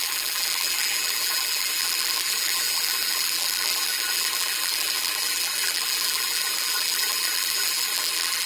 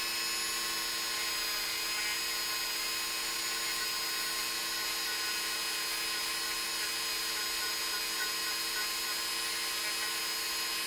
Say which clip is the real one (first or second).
second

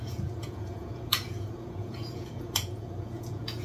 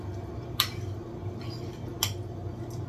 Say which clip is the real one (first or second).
second